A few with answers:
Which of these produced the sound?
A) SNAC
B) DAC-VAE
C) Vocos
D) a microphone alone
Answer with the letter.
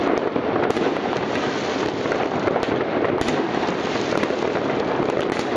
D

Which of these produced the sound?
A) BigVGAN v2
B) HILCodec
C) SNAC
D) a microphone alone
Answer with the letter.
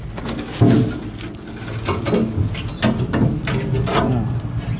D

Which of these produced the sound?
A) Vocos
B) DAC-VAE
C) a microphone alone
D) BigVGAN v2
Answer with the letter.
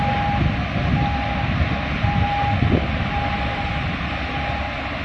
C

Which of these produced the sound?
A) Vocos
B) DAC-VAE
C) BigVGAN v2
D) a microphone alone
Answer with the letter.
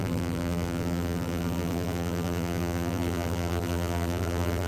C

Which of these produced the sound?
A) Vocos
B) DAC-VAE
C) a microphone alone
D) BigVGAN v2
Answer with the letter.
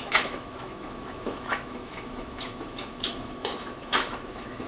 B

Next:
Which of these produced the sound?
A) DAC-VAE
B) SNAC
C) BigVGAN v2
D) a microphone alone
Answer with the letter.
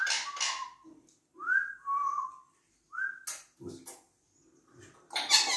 D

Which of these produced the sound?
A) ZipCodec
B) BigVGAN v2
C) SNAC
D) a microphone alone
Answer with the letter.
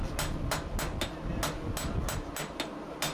D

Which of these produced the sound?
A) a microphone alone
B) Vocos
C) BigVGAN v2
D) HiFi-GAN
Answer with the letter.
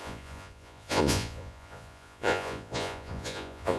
B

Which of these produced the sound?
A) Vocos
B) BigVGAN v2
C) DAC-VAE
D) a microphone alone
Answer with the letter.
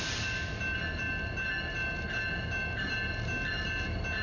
D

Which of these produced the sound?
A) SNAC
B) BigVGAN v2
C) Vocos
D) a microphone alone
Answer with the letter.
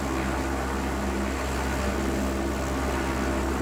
D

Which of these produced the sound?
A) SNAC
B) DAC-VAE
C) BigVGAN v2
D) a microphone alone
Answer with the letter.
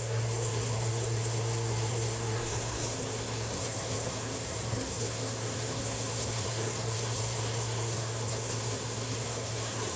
A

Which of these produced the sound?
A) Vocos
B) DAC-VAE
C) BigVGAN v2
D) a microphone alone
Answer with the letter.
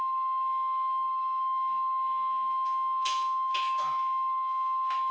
B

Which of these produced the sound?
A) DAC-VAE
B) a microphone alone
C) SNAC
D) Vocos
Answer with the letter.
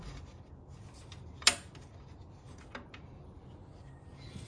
B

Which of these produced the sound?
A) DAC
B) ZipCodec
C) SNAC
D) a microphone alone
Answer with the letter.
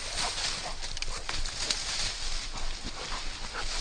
D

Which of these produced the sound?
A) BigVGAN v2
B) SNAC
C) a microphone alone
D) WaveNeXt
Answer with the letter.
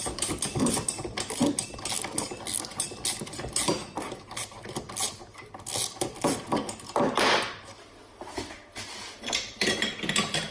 C